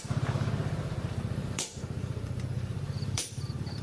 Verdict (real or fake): fake